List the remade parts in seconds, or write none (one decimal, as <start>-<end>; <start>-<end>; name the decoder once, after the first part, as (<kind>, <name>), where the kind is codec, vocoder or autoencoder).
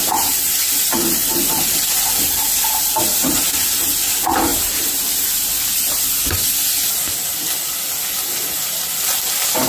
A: none